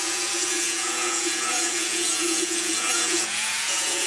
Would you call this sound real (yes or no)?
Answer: no